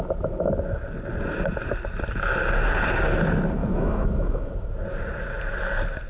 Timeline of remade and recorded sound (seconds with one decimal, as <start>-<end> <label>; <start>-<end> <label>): 0.0-3.6 recorded; 3.6-4.5 remade; 4.5-6.1 recorded

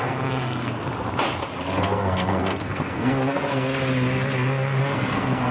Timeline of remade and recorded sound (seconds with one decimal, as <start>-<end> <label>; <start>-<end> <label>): 0.0-0.8 remade; 0.8-1.8 recorded; 1.8-3.7 remade; 3.7-4.8 recorded; 4.8-5.5 remade